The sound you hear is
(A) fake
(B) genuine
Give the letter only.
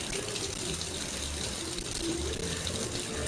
B